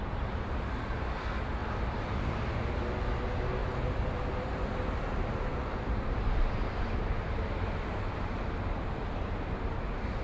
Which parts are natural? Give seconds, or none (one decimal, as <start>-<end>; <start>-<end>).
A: 0.0-1.6; 2.4-3.6; 8.4-10.2